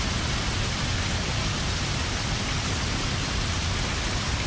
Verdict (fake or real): real